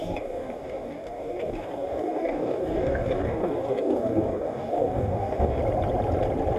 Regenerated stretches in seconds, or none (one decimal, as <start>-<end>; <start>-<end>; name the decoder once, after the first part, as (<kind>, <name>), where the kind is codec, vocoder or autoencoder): 0.0-5.6 (codec, DAC)